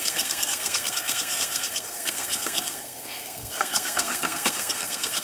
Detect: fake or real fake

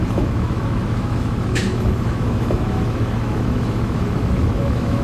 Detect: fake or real fake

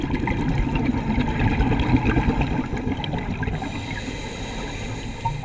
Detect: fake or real real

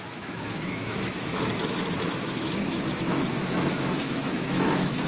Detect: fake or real fake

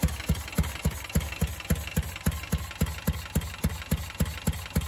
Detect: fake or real real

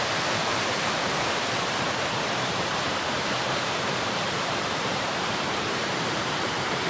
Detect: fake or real fake